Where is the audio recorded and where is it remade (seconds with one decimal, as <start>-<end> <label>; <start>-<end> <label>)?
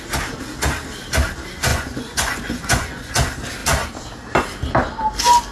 0.0-1.7 recorded; 1.7-3.1 remade; 3.1-5.5 recorded